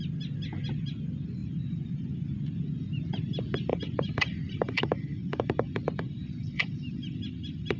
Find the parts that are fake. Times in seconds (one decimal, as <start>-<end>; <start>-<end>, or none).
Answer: 1.4-2.3; 3.7-7.8